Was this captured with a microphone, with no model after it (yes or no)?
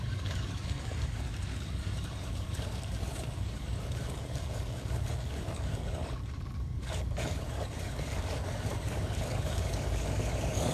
no